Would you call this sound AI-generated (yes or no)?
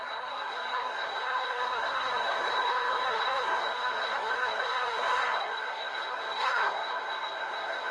yes